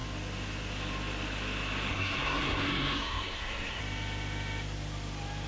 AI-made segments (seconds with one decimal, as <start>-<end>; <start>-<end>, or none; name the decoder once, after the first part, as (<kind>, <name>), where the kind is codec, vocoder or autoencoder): 1.9-3.8 (codec, SNAC)